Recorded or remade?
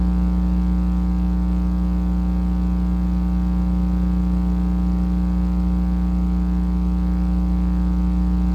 recorded